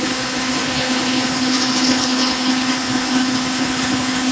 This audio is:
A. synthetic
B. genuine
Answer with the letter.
A